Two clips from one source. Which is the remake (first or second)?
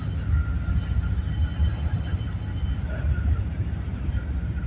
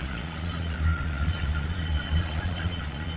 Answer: second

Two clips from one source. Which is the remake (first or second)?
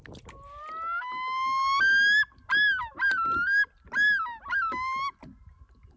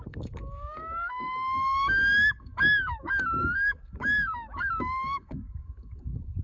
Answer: second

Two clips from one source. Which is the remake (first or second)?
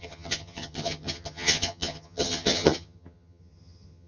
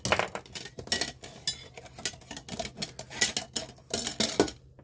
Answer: first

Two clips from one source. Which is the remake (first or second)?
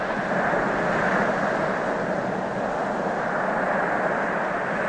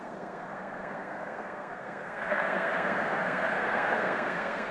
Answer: second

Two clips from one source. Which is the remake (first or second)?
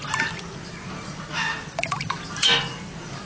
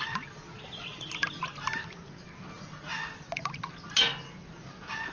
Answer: first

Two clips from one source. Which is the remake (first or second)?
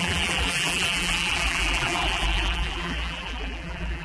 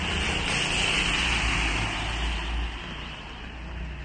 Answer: first